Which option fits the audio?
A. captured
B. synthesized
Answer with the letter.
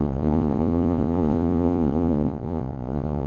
B